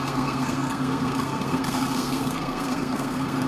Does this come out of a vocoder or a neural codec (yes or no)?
yes